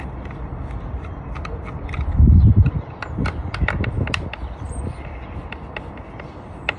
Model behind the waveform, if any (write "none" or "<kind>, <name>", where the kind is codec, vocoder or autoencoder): none